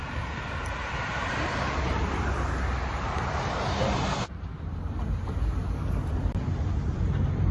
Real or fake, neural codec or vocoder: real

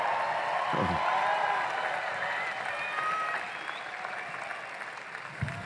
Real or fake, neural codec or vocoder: real